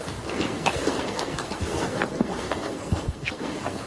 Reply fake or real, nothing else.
fake